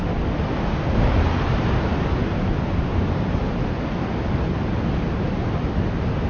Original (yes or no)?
yes